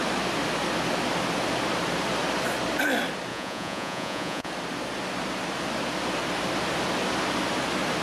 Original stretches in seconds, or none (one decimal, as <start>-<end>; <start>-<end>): 0.0-3.3; 4.5-8.0